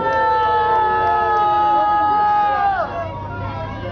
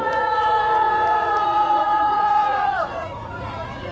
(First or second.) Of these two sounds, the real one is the first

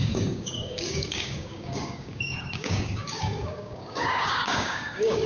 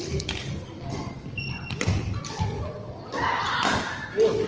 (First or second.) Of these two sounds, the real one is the second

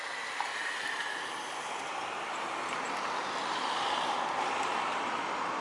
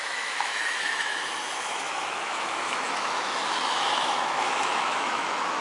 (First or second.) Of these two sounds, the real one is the first